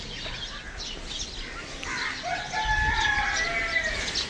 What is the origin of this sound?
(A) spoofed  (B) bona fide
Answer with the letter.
B